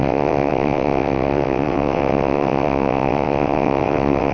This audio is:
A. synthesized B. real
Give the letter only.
A